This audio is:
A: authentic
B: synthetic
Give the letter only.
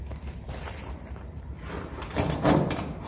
B